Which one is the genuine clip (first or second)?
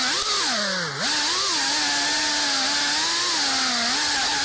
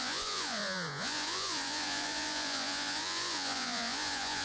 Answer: first